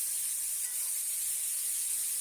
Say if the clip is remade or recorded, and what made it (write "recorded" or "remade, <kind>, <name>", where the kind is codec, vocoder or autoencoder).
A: recorded